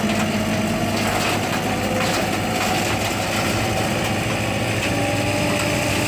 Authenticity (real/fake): real